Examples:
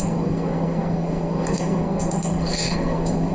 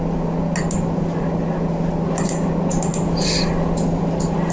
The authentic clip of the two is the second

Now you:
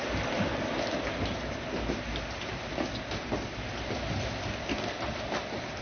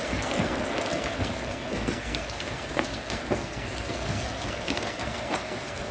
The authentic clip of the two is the first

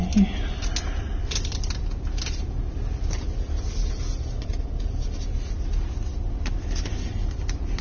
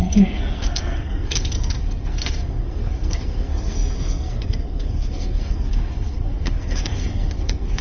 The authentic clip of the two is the first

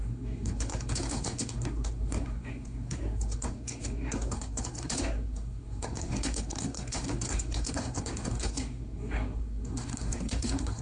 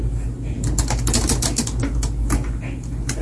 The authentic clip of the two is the second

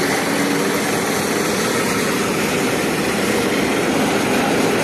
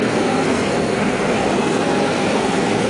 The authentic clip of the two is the first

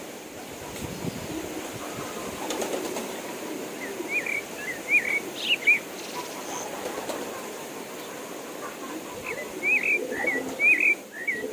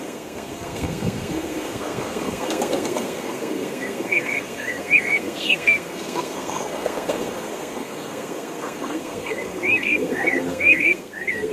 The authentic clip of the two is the first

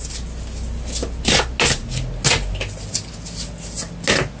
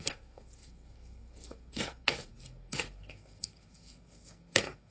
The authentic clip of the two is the first